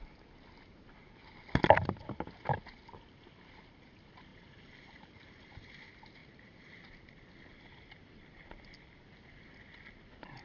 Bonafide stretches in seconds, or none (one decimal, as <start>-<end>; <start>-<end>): 0.0-1.0; 1.6-4.3; 5.7-6.2; 6.8-10.4

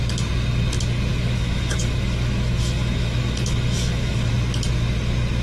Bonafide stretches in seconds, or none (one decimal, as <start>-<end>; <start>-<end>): 0.0-1.1; 4.3-5.4

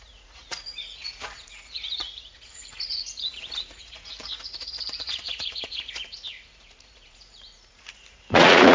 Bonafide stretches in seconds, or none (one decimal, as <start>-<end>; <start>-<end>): none